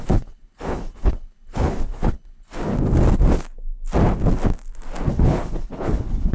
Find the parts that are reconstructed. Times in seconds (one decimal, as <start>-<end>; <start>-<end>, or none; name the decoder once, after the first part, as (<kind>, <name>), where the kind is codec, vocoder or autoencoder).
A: 0.0-2.7 (codec, HILCodec); 5.1-6.3

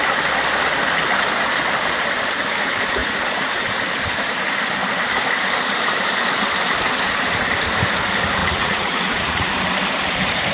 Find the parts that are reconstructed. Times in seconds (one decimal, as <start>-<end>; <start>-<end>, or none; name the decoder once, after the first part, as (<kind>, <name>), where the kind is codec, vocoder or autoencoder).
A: 3.0-3.6 (vocoder, Vocos); 8.4-9.5

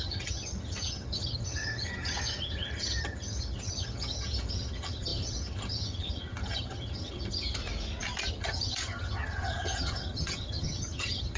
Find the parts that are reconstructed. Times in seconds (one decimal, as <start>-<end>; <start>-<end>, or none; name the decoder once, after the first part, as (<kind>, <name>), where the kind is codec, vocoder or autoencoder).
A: 0.0-7.6 (vocoder, HiFi-GAN); 8.3-11.4

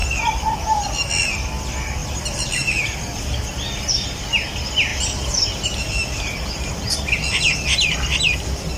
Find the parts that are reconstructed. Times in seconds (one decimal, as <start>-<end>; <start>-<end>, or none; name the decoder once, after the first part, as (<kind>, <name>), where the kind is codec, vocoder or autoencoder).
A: 2.0-3.9 (vocoder, BigVGAN v2); 4.9-7.5

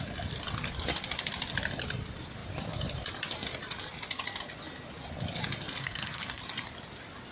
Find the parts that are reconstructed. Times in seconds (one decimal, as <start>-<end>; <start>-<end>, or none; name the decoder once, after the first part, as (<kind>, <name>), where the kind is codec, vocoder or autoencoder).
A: 5.8-6.4 (codec, SNAC)